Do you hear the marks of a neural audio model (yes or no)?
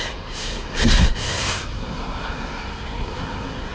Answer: yes